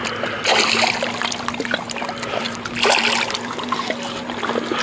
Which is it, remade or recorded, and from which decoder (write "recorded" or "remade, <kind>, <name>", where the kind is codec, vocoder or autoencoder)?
recorded